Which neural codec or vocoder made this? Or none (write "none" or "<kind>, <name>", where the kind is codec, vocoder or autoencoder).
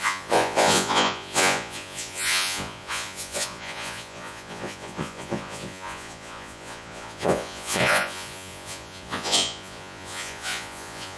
vocoder, Vocos